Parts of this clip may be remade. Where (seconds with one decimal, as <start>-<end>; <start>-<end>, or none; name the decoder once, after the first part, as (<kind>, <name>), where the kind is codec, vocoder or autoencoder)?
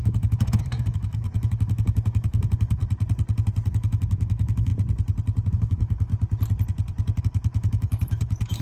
0.0-2.8 (autoencoder, DAC-VAE); 3.7-4.7; 5.5-6.1; 7.2-8.6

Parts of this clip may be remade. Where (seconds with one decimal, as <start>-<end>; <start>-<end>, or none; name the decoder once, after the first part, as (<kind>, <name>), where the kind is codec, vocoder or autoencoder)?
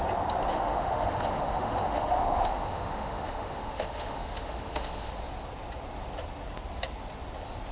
0.5-5.1 (autoencoder, DAC-VAE)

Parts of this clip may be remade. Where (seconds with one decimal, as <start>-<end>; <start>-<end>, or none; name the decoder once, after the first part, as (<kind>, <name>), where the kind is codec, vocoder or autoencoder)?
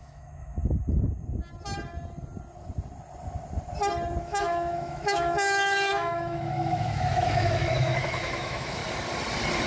0.0-0.6 (autoencoder, DAC-VAE); 4.2-8.8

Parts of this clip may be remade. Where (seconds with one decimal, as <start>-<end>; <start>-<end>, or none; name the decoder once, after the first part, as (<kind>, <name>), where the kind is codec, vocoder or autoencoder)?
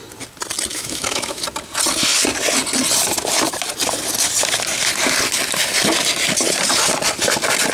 0.7-1.4 (autoencoder, DAC-VAE)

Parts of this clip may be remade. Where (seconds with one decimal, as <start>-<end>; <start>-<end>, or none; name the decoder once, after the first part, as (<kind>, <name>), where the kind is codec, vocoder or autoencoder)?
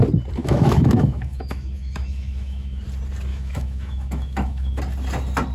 0.4-2.8 (autoencoder, DAC-VAE); 3.3-4.8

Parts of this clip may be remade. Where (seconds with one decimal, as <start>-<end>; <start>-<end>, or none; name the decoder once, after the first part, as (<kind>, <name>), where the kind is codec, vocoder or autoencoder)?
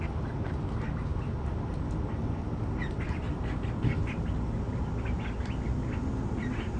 none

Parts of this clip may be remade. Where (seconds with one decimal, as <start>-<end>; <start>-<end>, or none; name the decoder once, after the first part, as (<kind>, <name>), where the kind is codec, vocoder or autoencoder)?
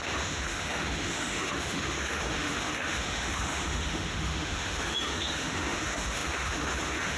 0.0-7.2 (autoencoder, DAC-VAE)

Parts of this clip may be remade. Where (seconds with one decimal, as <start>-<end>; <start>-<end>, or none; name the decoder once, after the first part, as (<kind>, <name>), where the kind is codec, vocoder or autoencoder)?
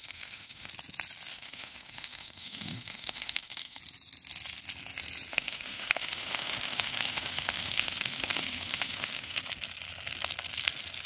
0.0-0.7 (autoencoder, DAC-VAE); 1.3-3.8; 5.3-9.4